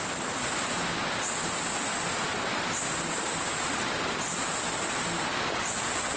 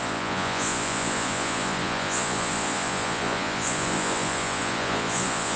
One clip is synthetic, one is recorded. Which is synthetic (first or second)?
second